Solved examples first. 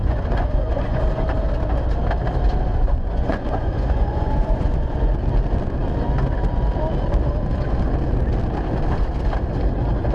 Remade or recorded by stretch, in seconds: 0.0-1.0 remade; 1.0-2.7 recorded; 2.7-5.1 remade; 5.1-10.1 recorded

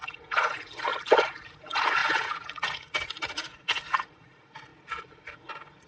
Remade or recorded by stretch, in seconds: 0.0-0.9 remade; 0.9-1.5 recorded; 1.5-4.7 remade; 4.7-5.3 recorded; 5.3-5.9 remade

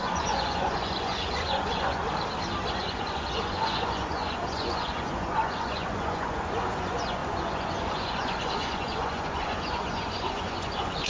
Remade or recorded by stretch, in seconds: 0.0-2.0 remade; 2.0-2.7 recorded; 2.7-11.1 remade

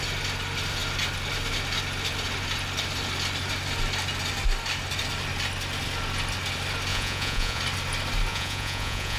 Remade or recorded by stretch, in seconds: 0.0-6.9 recorded; 6.9-7.6 remade; 7.6-8.3 recorded; 8.3-9.2 remade

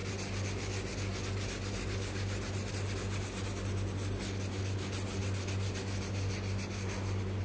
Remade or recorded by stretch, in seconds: 0.0-7.4 recorded

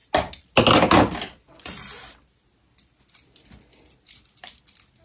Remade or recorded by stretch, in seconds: 0.0-5.0 recorded

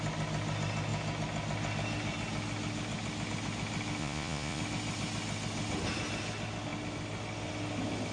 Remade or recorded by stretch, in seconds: 0.0-4.0 recorded; 4.0-4.6 remade; 4.6-8.1 recorded

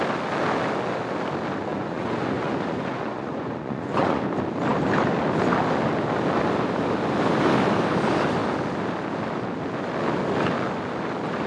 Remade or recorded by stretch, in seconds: 0.0-1.7 recorded; 1.7-4.2 remade; 4.2-11.5 recorded